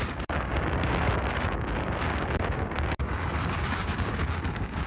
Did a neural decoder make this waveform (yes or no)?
yes